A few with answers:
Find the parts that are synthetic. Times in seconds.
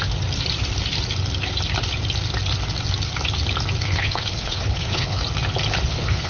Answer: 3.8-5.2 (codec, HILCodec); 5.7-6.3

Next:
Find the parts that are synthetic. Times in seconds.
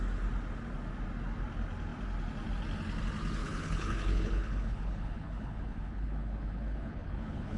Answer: 3.4-7.6 (codec, HILCodec)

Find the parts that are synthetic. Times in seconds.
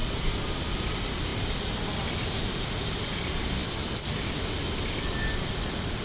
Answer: none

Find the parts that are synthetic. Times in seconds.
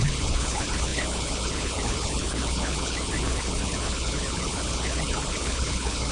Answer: 0.0-6.1 (codec, HILCodec)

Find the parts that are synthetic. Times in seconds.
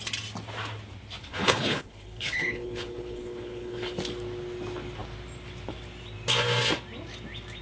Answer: 1.2-4.0 (codec, HILCodec)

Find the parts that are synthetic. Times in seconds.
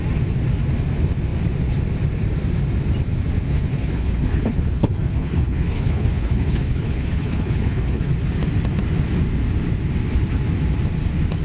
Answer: 3.5-8.1 (codec, HILCodec)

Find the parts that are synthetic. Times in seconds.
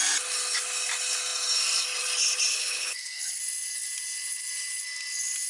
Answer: 2.5-3.4 (codec, HILCodec)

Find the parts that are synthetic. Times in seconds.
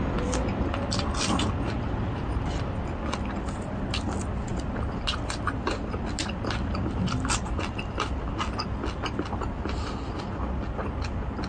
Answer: none